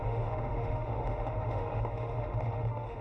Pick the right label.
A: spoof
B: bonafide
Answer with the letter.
A